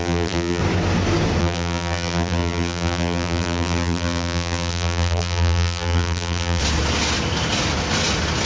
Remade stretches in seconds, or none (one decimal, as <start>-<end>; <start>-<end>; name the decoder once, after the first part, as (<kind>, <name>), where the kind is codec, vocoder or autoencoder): 0.0-0.6 (vocoder, BigVGAN v2); 1.4-6.6